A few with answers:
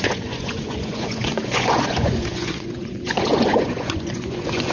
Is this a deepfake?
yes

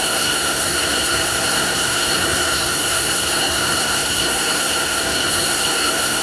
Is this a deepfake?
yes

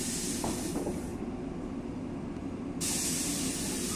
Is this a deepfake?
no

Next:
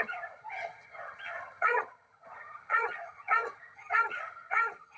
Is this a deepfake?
yes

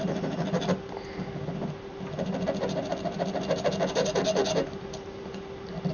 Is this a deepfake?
no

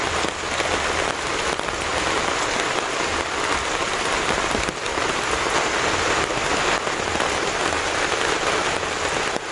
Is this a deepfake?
no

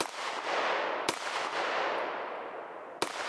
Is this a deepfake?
no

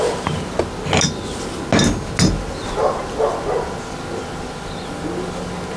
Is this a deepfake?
no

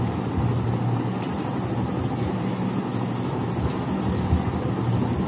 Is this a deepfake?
no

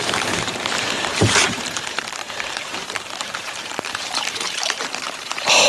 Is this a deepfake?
yes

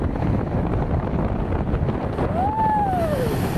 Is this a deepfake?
no